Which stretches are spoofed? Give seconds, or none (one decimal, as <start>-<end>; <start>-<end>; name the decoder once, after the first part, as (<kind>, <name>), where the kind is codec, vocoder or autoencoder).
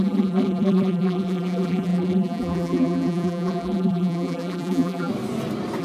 0.0-5.1 (vocoder, BigVGAN v2)